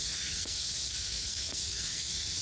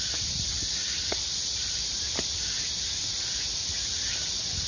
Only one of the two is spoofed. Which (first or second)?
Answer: first